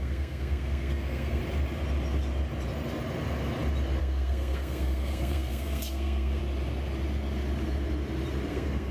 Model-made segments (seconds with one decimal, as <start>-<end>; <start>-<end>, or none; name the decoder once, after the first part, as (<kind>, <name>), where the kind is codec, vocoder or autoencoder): 0.0-1.4 (codec, SNAC); 4.0-6.4; 8.5-8.9